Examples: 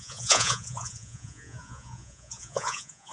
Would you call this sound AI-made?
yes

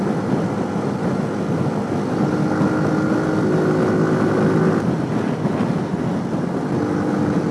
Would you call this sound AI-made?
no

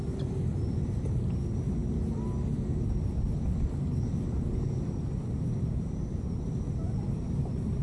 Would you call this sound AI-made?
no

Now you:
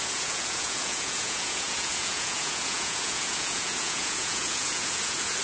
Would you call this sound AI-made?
yes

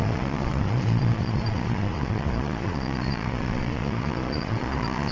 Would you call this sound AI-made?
yes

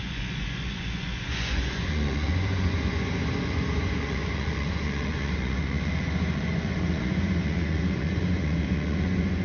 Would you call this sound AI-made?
yes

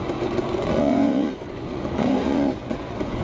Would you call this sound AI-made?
yes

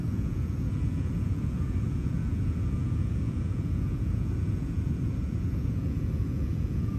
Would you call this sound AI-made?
yes